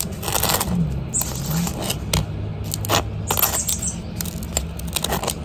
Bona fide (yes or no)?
yes